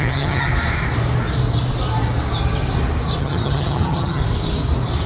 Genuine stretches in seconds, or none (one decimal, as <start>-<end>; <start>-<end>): 0.5-3.2; 4.2-5.1